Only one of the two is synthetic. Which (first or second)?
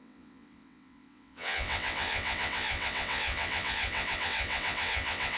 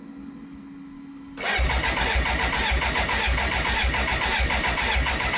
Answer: first